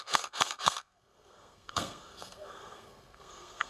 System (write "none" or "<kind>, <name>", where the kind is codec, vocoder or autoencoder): codec, SNAC